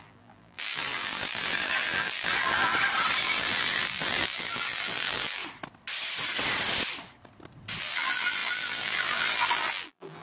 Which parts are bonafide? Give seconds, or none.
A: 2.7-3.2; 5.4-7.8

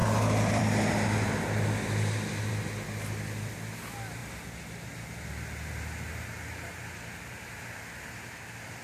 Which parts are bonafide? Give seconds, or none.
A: 2.5-8.8